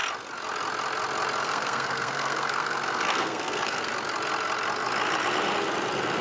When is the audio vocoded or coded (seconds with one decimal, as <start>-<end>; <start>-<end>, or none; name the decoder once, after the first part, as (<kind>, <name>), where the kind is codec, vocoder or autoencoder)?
1.4-3.9 (codec, SNAC)